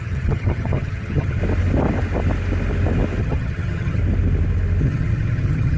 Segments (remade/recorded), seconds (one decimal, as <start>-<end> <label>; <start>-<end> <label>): 0.0-1.4 remade; 1.4-3.2 recorded; 3.2-4.0 remade; 4.0-4.8 recorded; 4.8-5.8 remade